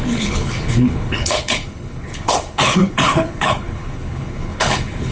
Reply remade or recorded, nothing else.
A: remade